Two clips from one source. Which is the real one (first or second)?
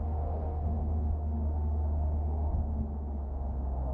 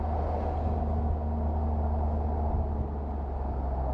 second